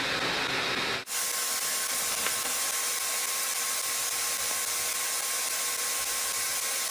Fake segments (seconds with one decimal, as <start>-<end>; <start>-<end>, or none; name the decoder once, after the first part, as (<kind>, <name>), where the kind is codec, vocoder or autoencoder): none